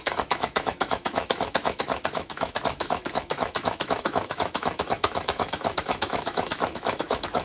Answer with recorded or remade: remade